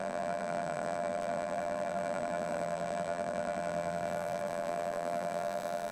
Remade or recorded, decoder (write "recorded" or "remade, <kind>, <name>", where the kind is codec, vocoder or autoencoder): remade, vocoder, BigVGAN v2